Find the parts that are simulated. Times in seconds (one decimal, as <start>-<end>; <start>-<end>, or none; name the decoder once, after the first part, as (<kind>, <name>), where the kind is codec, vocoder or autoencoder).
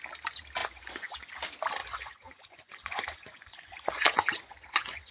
0.6-1.3 (vocoder, Vocos); 1.8-5.1